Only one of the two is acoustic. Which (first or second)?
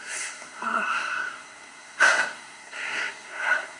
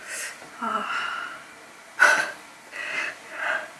second